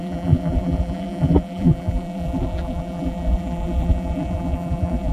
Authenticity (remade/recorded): remade